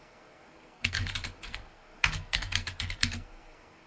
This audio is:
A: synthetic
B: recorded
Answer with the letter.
A